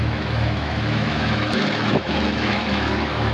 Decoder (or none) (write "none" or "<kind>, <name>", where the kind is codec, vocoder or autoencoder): autoencoder, DAC-VAE